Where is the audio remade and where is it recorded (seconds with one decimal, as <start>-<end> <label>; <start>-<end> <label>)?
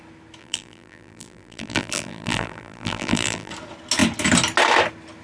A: 0.0-0.4 recorded; 0.4-3.5 remade; 3.5-5.2 recorded